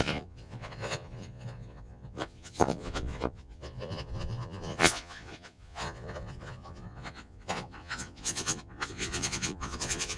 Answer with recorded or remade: remade